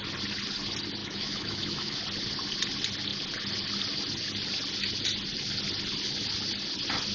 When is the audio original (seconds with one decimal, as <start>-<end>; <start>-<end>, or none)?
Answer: 0.0-1.0; 2.0-7.1